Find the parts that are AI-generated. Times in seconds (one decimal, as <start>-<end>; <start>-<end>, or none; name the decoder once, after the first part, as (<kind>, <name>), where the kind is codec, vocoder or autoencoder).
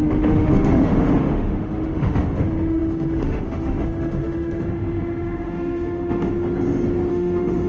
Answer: 0.0-6.3 (autoencoder, DAC-VAE); 7.1-7.7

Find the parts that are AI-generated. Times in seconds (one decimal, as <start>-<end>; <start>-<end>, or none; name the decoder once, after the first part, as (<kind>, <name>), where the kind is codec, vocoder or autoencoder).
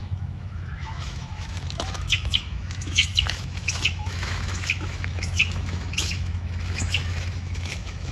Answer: 0.0-8.1 (autoencoder, DAC-VAE)